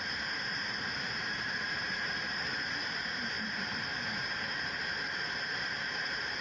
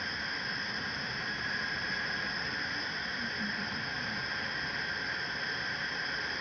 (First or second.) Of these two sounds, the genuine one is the second